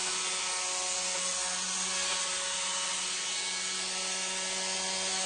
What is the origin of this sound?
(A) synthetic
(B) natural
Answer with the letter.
B